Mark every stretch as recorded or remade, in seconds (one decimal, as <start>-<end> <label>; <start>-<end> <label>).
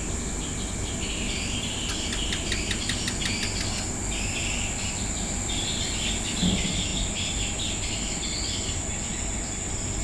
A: 0.0-10.0 recorded